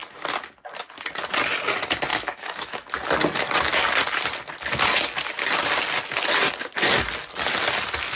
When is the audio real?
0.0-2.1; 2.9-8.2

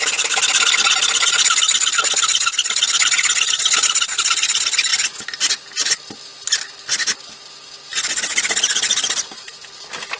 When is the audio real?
0.0-10.2

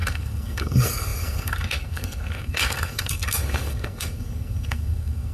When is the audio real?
none

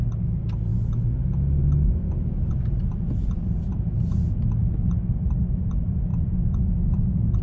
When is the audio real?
0.0-3.7; 4.4-6.1

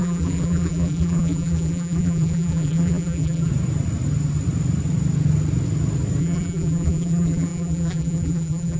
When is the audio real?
3.5-6.2

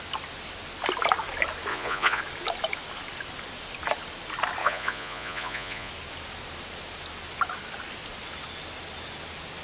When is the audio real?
0.0-1.7; 2.2-4.6; 5.9-9.6

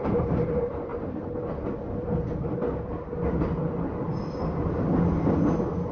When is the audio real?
0.0-5.9